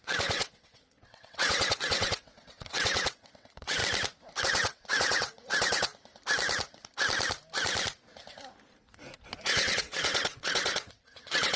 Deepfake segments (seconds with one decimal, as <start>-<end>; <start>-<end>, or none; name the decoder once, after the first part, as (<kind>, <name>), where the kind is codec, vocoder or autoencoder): 0.0-3.8 (vocoder, WaveNeXt); 4.4-5.9; 9.3-11.6